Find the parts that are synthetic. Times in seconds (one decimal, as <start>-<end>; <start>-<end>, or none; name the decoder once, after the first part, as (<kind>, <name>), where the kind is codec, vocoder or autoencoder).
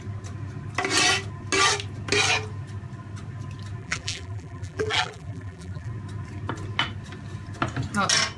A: 3.8-5.9 (vocoder, BigVGAN v2)